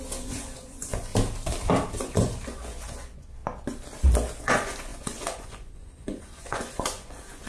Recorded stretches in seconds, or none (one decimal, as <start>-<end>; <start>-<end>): 1.1-2.0; 3.4-4.4